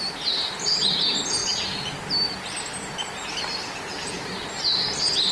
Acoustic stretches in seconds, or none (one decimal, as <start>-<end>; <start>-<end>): 0.0-5.3